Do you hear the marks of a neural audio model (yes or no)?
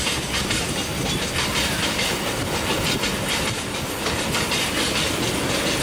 no